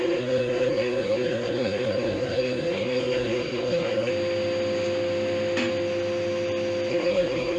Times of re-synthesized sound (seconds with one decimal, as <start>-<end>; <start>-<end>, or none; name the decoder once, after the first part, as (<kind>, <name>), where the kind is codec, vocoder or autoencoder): 0.0-4.1 (codec, SNAC); 6.9-7.6